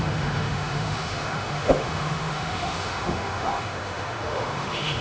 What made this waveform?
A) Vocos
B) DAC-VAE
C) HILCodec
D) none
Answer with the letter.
B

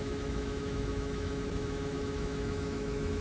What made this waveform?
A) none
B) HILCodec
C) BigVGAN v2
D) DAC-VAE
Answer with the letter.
D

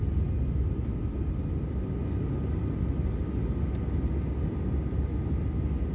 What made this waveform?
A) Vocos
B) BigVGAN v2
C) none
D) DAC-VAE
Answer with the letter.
C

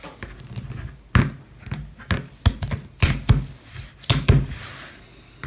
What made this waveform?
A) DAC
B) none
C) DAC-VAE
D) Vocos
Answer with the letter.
B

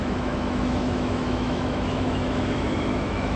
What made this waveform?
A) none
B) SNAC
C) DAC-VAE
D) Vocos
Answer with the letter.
C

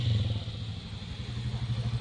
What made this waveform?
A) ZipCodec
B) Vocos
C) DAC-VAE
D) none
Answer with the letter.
D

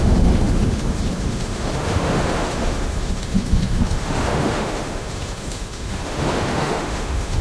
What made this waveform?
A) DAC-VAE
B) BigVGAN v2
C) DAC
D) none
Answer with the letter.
A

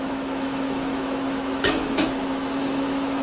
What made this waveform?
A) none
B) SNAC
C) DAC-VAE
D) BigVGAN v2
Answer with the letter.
C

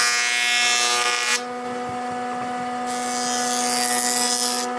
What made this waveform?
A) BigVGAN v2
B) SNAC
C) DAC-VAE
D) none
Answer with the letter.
D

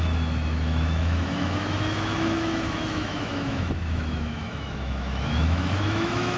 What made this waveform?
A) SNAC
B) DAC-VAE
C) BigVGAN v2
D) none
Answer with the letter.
B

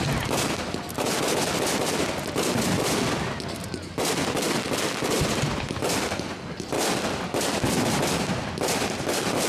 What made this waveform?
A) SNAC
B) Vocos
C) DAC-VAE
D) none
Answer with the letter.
D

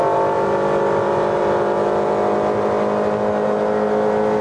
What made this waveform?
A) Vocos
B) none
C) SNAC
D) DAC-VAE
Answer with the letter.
B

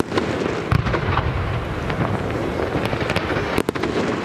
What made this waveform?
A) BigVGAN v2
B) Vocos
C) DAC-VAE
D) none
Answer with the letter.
D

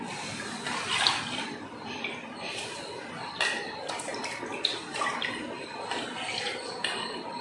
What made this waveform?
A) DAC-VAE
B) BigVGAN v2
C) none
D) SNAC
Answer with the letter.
C